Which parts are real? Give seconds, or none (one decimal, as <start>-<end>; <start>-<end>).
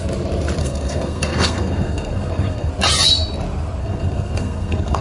0.0-0.6; 2.7-3.8